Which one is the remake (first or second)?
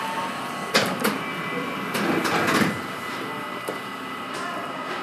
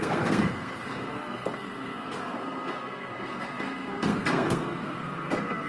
second